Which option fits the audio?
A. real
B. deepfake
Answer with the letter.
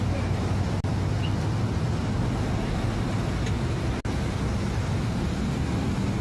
A